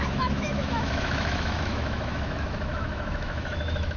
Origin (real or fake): fake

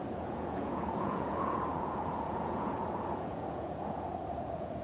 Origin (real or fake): fake